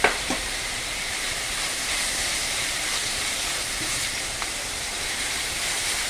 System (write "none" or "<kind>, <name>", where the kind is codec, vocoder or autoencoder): vocoder, BigVGAN v2